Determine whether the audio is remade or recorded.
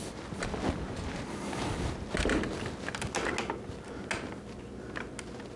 recorded